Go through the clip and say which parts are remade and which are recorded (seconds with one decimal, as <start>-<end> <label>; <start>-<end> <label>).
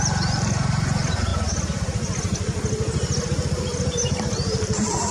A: 0.0-5.1 recorded